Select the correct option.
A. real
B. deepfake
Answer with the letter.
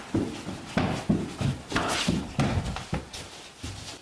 A